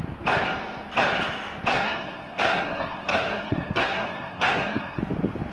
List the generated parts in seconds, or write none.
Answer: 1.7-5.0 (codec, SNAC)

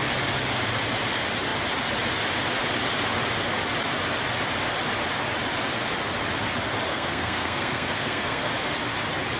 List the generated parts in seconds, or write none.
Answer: 6.9-8.5 (codec, SNAC)

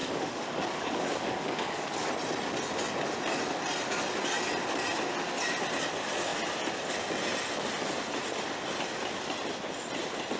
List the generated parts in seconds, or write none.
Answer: 0.0-2.1 (codec, DAC)